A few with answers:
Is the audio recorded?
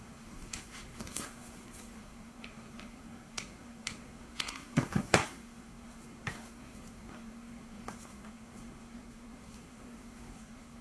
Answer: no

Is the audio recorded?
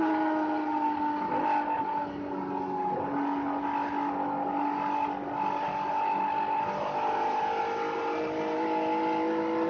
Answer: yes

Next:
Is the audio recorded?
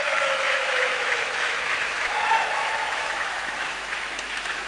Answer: no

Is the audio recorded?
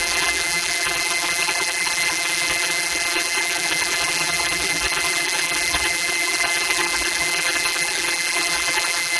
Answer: no